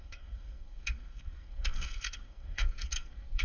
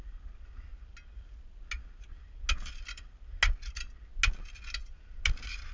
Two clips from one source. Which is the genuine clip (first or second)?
second